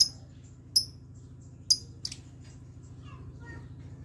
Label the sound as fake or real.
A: real